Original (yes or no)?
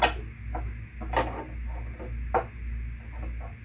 yes